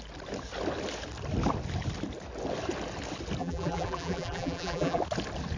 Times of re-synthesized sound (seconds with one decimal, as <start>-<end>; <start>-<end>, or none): 3.4-5.0